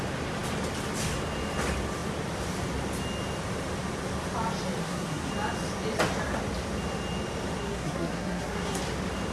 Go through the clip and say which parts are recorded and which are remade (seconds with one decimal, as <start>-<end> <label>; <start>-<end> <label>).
0.0-4.8 recorded; 4.8-5.3 remade; 5.3-7.6 recorded; 7.6-8.8 remade; 8.8-9.3 recorded